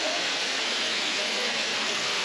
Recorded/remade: remade